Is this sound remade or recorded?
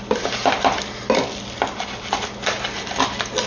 recorded